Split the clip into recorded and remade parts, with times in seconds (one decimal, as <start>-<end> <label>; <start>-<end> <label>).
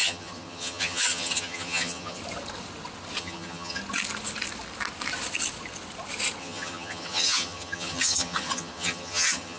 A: 0.0-2.2 remade; 2.2-3.2 recorded; 3.2-3.8 remade; 3.8-6.4 recorded; 6.4-9.6 remade